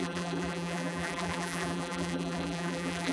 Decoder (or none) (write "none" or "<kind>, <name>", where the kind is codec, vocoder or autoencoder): vocoder, BigVGAN v2